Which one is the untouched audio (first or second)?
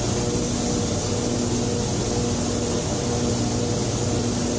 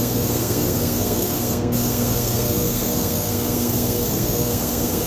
first